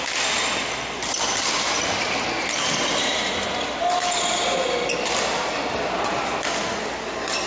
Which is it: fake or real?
real